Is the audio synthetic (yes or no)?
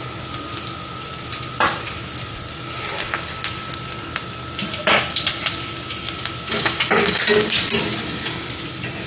no